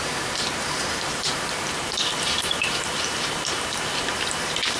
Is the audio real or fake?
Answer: fake